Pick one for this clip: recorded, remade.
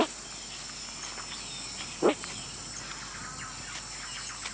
recorded